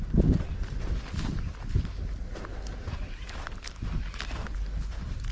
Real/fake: real